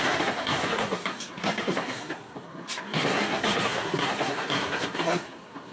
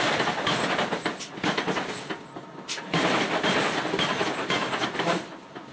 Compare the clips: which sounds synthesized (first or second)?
first